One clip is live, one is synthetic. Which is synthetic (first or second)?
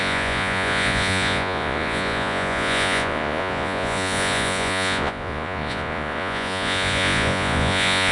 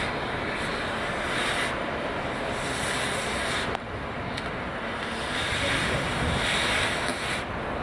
first